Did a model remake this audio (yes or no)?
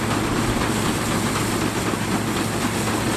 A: no